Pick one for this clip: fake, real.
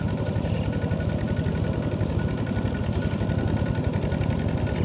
real